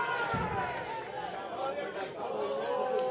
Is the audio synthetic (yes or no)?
no